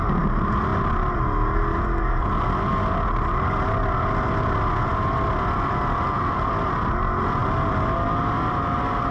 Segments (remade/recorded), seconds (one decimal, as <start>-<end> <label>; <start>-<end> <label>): 0.0-9.1 recorded